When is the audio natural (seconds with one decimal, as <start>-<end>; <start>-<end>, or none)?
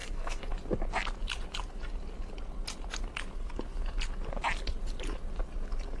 0.5-6.0